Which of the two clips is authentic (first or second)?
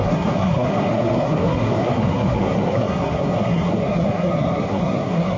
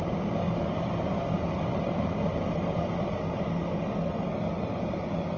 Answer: second